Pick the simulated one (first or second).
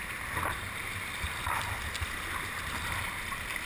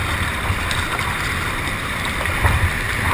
second